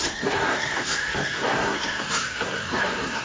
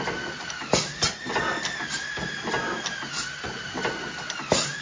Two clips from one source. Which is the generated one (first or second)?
first